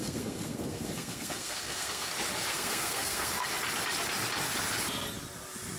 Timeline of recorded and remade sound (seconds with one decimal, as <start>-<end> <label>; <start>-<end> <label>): 0.0-2.1 remade; 2.1-2.5 recorded; 2.5-3.3 remade; 3.3-5.8 recorded